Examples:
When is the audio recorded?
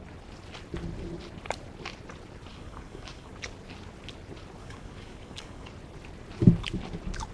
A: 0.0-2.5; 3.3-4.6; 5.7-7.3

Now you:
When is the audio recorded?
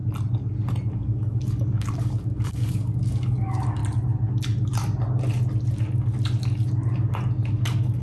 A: 0.0-0.9; 3.8-7.5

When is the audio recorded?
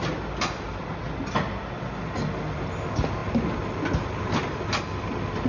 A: 0.0-5.5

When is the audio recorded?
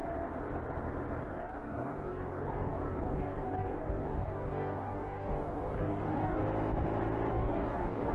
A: 0.0-1.2; 6.4-7.3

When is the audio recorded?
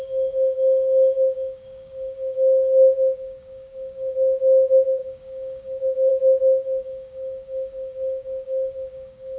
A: none